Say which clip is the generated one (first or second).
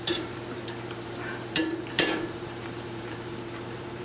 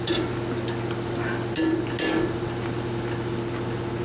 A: first